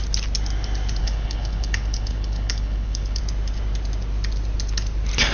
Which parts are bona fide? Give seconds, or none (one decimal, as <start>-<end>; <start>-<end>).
0.0-1.0; 3.2-5.3